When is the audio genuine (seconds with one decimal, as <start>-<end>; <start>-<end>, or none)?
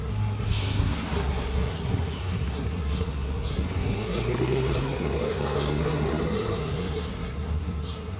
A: none